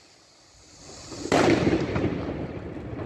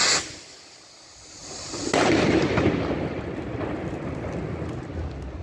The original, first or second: second